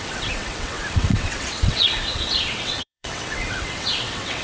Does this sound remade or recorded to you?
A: remade